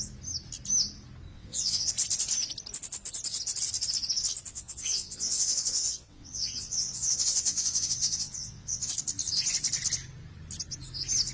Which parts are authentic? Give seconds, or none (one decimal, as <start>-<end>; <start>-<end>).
0.0-1.3; 1.9-4.5; 8.9-11.3